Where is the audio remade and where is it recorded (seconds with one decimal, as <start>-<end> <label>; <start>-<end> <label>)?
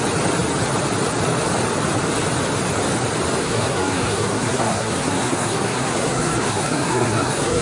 0.0-3.4 recorded; 3.4-7.6 remade